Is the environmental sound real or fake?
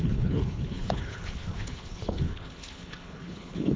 fake